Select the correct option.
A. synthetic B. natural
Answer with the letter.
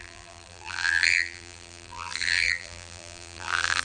A